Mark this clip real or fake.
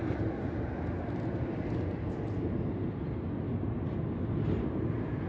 real